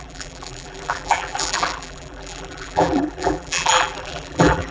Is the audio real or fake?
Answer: fake